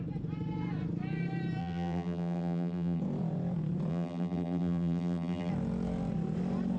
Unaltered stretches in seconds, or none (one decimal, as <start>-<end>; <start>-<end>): 0.0-1.6; 3.0-3.9; 5.5-6.8